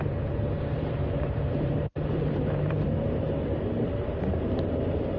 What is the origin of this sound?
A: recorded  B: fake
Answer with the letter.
B